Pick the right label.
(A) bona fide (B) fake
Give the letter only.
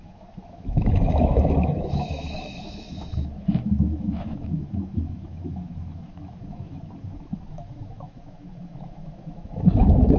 B